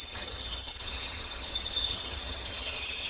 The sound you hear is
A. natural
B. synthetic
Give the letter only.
B